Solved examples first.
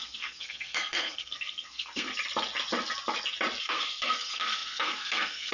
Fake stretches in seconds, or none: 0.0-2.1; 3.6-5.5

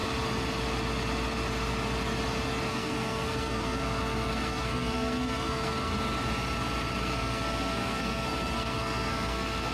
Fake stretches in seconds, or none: 2.7-5.9; 7.0-9.7